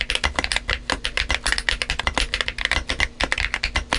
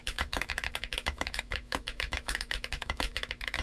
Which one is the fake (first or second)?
second